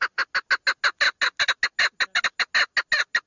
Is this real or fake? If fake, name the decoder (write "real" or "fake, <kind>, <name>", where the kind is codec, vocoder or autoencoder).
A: real